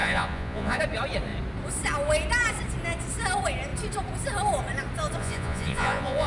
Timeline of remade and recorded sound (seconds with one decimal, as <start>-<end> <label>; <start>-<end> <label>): 0.0-0.8 remade; 0.8-5.2 recorded; 5.2-6.3 remade